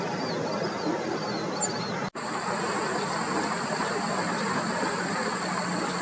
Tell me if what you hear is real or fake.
real